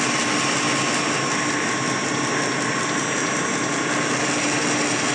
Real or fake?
real